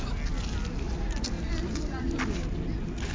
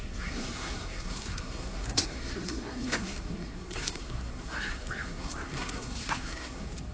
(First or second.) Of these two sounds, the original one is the first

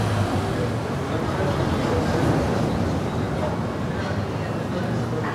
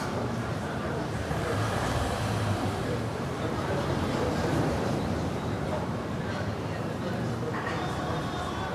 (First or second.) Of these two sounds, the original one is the first